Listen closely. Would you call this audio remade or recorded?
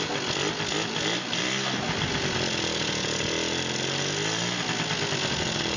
recorded